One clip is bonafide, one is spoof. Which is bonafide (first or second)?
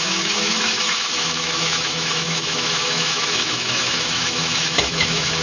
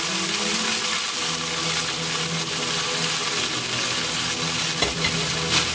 second